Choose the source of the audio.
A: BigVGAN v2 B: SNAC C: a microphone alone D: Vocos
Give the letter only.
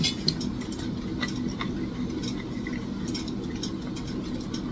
C